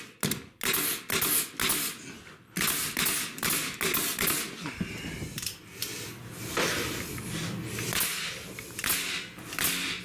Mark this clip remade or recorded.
recorded